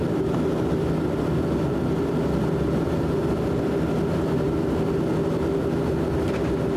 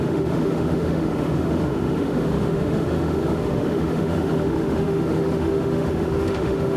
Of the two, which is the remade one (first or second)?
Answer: second